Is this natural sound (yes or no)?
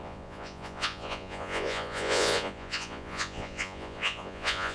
no